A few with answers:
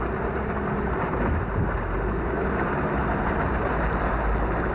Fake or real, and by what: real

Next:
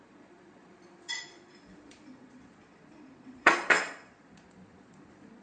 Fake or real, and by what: fake, vocoder, Vocos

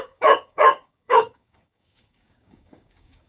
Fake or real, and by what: fake, codec, DAC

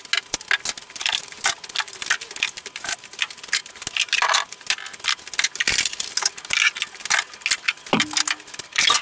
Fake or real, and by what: real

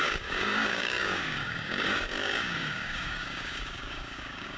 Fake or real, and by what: fake, codec, DAC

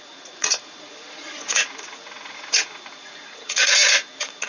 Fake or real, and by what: fake, vocoder, Vocos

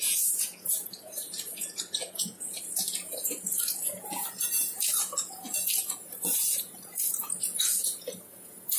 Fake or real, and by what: fake, vocoder, Vocos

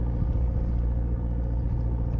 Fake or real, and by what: real